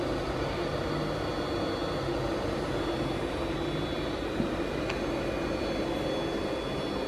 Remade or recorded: recorded